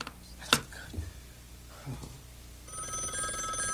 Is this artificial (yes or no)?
no